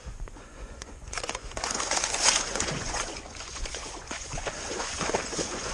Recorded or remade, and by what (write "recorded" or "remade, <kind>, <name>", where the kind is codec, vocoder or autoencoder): remade, vocoder, Vocos